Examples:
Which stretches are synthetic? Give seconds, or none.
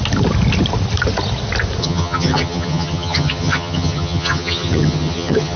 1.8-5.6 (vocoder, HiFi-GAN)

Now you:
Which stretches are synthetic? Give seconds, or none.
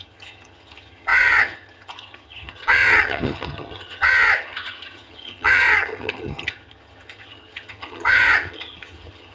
0.0-9.3 (vocoder, HiFi-GAN)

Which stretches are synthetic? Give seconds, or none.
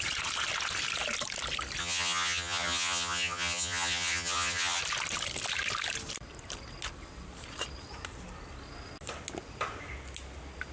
1.8-4.8 (vocoder, HiFi-GAN)